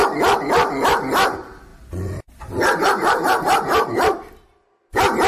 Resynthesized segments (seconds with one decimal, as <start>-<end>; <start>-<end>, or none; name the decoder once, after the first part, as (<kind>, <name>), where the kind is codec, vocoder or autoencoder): none